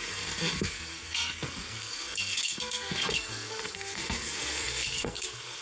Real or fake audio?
fake